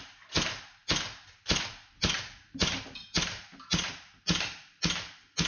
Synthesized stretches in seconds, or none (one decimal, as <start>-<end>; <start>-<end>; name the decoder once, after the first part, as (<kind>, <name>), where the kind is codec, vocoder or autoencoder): none